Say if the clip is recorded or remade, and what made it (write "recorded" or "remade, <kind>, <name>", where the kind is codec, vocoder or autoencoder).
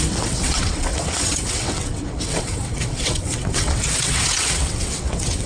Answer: remade, vocoder, WaveNeXt